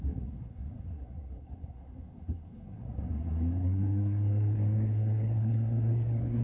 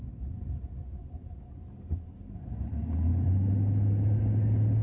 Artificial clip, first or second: first